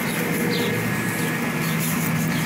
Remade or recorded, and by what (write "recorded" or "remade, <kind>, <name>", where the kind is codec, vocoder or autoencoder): recorded